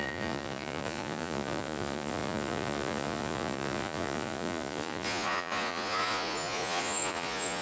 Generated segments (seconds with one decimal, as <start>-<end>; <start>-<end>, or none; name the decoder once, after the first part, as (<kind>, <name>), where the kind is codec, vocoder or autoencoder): 0.0-7.6 (vocoder, Vocos)

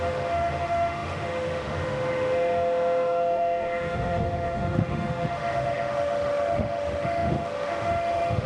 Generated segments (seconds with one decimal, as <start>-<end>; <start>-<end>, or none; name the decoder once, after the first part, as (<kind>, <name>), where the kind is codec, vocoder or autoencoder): 0.0-8.5 (autoencoder, DAC-VAE)